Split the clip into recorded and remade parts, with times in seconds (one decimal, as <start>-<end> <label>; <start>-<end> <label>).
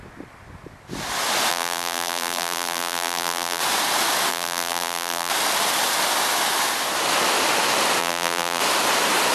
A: 0.0-1.5 recorded; 1.5-3.6 remade; 3.6-4.3 recorded; 4.3-5.3 remade; 5.3-8.0 recorded; 8.0-8.6 remade; 8.6-9.3 recorded